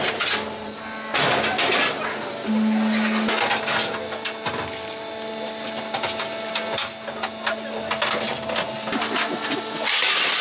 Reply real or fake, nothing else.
real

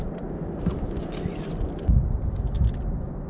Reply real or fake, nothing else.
real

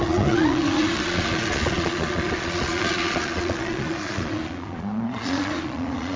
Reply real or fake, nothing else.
fake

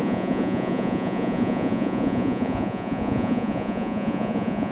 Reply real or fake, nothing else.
fake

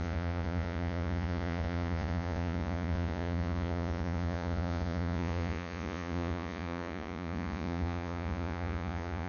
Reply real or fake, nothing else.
fake